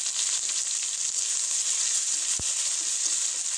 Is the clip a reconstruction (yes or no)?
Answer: no